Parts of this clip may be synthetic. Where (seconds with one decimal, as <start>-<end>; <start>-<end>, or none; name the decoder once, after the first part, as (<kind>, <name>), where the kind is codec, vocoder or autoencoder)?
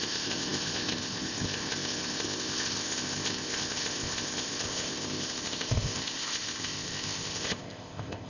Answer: 0.0-8.3 (codec, ZipCodec)